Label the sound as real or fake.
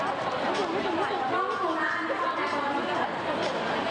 real